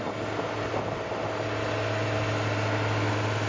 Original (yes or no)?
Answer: yes